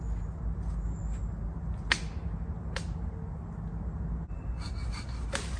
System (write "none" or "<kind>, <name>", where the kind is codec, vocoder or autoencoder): none